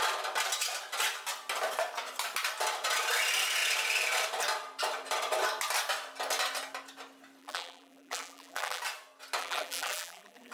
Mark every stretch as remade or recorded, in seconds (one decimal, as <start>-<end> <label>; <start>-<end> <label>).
0.0-7.4 recorded; 7.4-8.8 remade; 8.8-9.4 recorded; 9.4-10.5 remade